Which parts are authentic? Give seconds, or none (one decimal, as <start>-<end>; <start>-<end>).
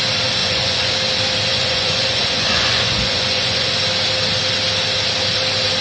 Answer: 0.0-0.4; 0.9-1.5; 3.7-5.8